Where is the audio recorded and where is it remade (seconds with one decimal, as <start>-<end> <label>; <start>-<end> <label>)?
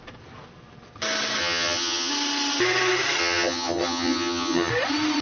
0.0-1.4 recorded; 1.4-2.1 remade; 2.1-3.2 recorded; 3.2-4.7 remade; 4.7-5.2 recorded